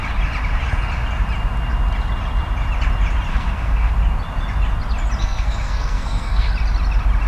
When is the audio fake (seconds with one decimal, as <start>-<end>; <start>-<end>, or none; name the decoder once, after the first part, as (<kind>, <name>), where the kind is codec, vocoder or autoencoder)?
3.3-3.9 (codec, SNAC); 5.2-6.5